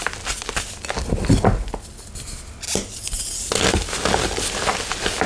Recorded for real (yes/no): yes